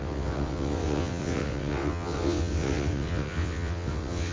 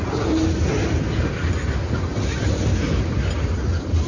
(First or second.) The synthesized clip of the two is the first